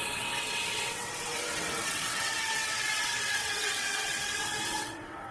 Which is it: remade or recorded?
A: remade